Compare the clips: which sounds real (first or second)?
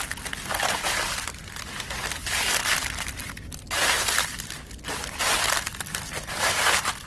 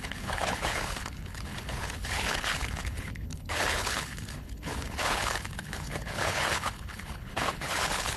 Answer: first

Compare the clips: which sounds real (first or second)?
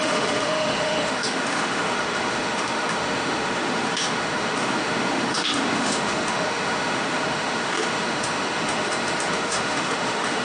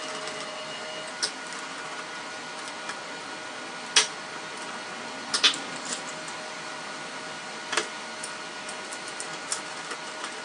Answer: second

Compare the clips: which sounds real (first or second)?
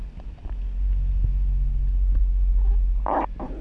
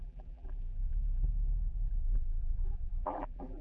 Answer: first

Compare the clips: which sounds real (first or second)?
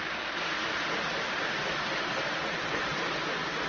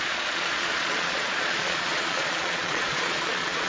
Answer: first